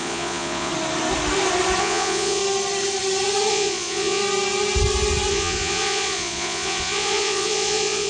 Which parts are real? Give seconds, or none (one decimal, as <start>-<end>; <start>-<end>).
0.7-1.8; 2.4-3.5; 4.2-5.3